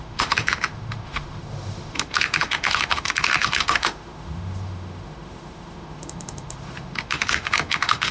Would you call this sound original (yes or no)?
no